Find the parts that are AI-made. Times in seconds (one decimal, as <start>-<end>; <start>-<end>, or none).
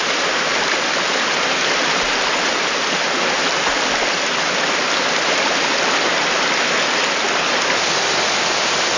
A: none